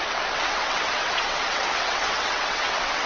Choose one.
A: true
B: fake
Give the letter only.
B